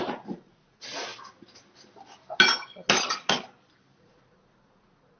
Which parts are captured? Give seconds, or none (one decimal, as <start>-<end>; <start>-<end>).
1.1-4.0